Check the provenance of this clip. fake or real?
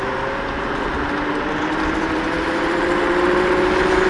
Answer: real